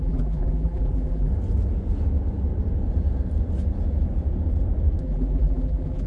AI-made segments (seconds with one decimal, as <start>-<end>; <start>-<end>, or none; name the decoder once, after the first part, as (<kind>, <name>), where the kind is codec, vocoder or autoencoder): 0.0-1.3 (vocoder, BigVGAN v2); 5.0-6.1